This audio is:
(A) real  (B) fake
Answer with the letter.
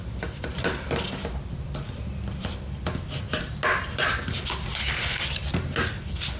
A